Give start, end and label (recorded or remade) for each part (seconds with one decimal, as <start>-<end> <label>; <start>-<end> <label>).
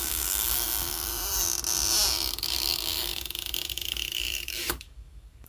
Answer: 0.0-1.1 remade; 1.1-2.3 recorded; 2.3-5.5 remade